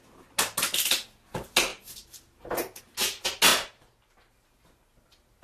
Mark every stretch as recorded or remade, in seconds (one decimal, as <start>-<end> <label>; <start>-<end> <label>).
0.0-5.4 recorded